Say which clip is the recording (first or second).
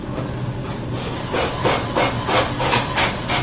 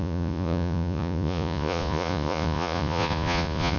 first